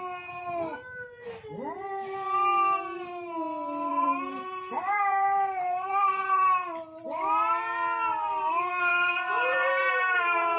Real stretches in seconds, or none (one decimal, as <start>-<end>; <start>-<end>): 0.0-3.9; 6.4-8.9